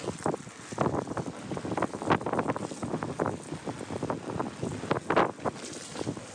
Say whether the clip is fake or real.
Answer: real